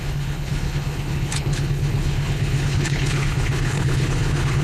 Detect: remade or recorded remade